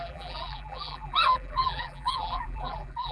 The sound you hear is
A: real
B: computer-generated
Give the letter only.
B